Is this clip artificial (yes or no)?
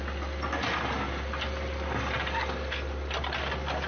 no